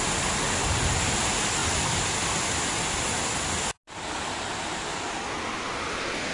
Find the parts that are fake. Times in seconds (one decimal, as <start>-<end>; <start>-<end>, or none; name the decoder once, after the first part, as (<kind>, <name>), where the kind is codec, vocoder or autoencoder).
none